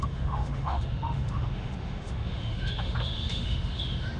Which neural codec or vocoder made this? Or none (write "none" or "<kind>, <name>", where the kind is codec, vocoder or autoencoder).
autoencoder, DAC-VAE